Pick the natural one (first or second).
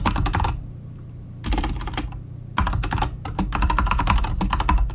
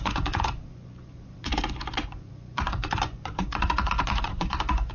first